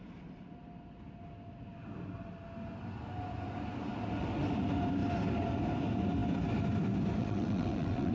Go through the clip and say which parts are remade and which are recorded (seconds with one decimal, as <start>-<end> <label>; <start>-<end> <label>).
0.0-7.2 recorded; 7.2-8.1 remade